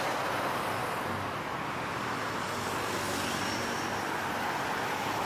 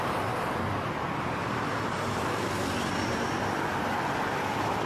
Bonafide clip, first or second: first